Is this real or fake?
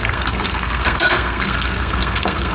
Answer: fake